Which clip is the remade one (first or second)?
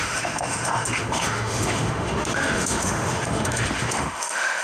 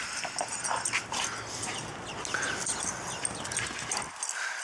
first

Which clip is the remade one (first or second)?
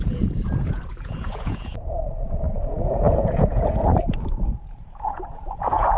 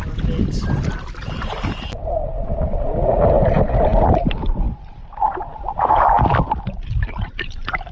first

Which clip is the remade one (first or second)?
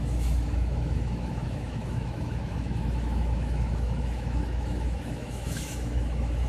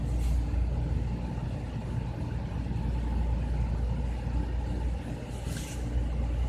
first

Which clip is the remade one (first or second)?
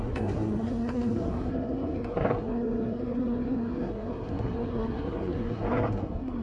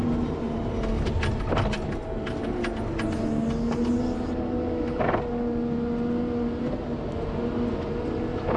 first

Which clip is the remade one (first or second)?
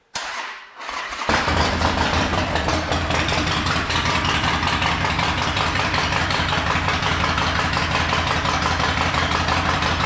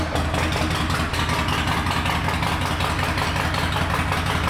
first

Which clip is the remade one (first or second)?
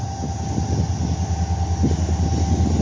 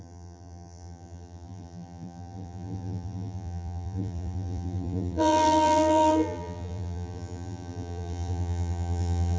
second